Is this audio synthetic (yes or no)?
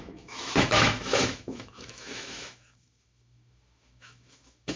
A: yes